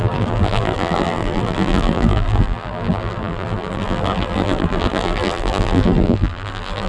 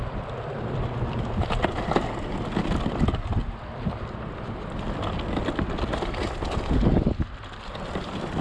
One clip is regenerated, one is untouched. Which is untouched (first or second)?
second